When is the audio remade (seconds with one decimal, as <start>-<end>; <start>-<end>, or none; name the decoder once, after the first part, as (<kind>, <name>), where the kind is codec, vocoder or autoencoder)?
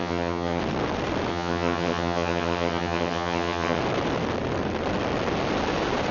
0.0-0.6 (vocoder, HiFi-GAN); 1.3-3.8